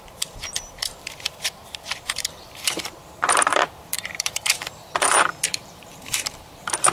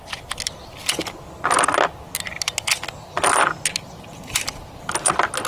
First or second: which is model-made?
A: first